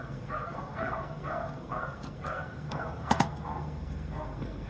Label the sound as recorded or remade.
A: remade